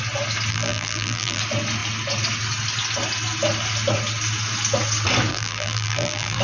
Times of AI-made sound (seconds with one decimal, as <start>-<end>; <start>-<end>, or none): 0.5-1.4; 5.3-6.4